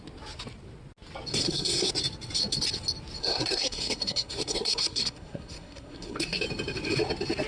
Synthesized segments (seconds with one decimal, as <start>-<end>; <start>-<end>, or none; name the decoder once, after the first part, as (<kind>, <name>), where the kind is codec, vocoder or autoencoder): 1.3-1.9 (codec, SNAC); 3.2-6.4